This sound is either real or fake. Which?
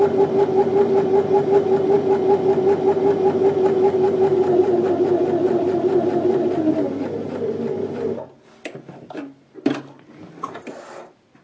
real